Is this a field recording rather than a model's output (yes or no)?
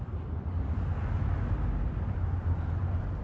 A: no